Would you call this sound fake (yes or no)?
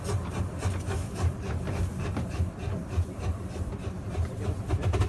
yes